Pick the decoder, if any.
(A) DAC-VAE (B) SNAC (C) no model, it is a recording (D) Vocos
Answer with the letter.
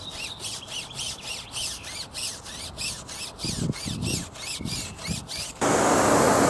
C